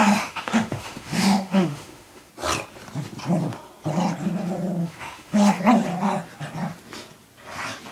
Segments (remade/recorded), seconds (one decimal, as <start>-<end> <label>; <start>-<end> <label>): 0.0-2.3 remade; 2.3-4.8 recorded; 4.8-5.6 remade; 5.6-7.9 recorded

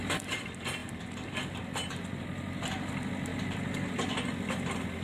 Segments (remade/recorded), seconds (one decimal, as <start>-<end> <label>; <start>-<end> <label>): 0.0-5.0 recorded